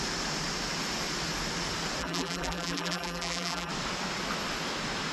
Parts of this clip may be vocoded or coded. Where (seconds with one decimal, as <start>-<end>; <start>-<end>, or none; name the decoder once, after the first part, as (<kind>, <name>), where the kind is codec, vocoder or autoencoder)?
2.0-3.7 (vocoder, BigVGAN v2)